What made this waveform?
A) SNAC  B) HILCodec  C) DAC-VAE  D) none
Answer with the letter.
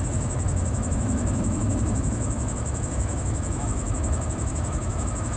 C